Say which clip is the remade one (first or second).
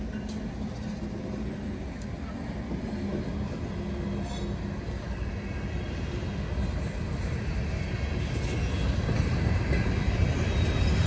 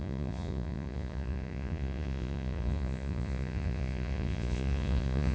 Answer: second